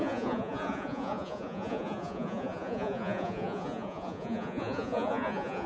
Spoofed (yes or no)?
yes